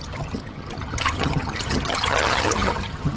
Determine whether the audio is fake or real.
fake